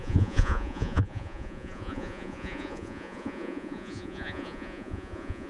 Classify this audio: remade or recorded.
remade